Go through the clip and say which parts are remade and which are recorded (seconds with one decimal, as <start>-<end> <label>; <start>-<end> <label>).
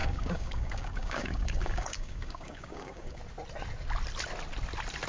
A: 0.0-3.2 remade; 3.2-5.1 recorded